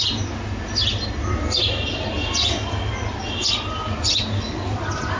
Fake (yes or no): no